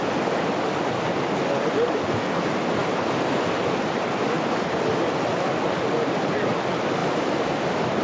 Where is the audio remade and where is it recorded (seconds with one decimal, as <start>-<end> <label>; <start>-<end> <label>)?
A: 0.0-8.0 recorded